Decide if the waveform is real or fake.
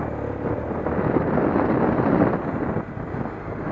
real